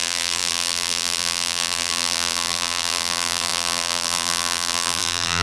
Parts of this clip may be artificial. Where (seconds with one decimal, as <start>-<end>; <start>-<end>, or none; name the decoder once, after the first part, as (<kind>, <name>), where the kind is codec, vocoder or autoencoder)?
0.0-5.4 (vocoder, BigVGAN v2)